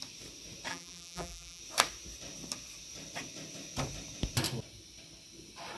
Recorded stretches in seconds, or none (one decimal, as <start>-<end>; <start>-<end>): 0.0-0.7; 1.6-5.8